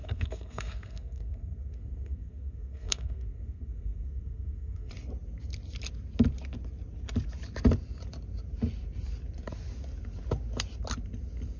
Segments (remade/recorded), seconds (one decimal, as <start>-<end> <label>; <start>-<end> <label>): 0.0-4.9 remade; 4.9-11.6 recorded